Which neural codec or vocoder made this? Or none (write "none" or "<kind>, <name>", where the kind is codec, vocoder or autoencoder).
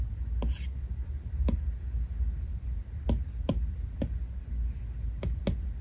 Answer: none